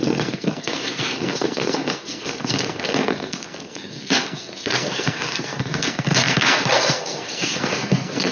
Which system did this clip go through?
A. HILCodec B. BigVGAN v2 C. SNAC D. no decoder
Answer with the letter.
C